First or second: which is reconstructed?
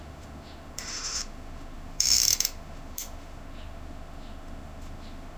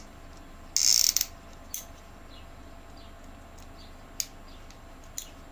first